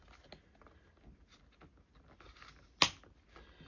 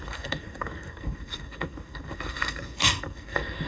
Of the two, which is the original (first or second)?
first